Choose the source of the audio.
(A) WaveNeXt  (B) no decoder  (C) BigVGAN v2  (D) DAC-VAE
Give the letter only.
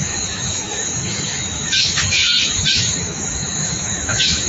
D